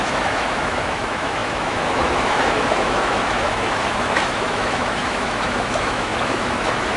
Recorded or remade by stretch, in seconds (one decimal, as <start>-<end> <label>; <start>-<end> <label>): 0.0-7.0 remade